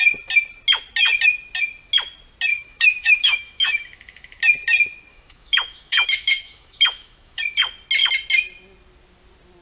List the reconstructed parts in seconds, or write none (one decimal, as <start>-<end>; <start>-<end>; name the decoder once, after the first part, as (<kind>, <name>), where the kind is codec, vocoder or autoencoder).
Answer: 2.5-4.4 (autoencoder, DAC-VAE); 5.1-7.4